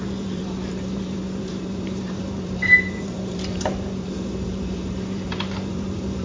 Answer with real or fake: fake